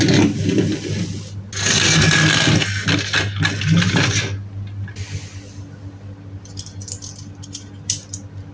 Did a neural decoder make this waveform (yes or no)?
no